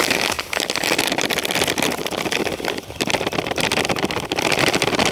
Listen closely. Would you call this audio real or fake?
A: real